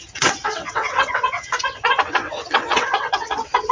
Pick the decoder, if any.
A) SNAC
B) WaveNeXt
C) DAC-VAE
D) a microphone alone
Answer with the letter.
B